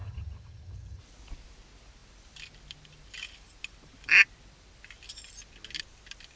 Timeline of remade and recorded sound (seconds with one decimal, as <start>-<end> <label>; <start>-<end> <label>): 0.0-1.0 remade; 1.0-6.4 recorded